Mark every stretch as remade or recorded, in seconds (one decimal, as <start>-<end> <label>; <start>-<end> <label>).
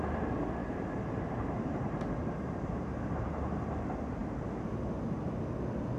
0.0-0.6 recorded; 0.6-3.7 remade; 3.7-6.0 recorded